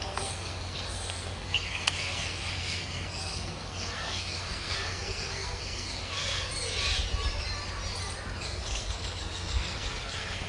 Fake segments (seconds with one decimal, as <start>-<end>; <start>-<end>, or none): 0.0-6.5; 8.4-10.5

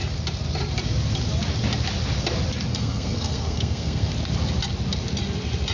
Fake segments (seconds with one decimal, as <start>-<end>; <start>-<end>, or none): 2.7-4.1

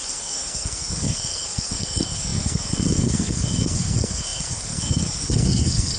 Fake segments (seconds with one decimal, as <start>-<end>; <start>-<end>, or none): 0.0-6.0

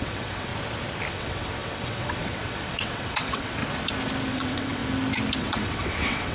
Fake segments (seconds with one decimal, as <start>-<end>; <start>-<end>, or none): 0.0-0.5; 1.1-3.6; 4.3-4.8; 5.4-6.3

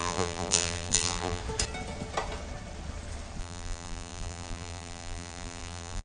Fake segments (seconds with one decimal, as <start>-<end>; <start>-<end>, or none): 0.0-1.4; 3.4-6.0

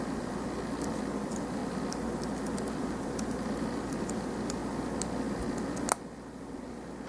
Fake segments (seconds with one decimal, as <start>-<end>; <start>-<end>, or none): none